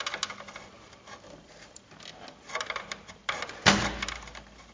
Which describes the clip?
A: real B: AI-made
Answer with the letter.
A